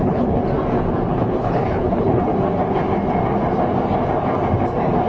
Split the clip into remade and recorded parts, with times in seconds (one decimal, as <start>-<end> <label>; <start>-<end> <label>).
0.0-0.4 remade; 0.4-1.1 recorded; 1.1-2.3 remade; 2.3-5.1 recorded